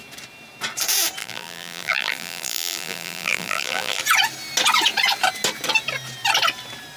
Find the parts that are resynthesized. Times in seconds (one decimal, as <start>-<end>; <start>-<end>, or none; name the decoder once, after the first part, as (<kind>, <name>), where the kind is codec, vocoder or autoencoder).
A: 1.2-4.0 (vocoder, BigVGAN v2)